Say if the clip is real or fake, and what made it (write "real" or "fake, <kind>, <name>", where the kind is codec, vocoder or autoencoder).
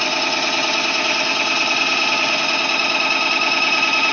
real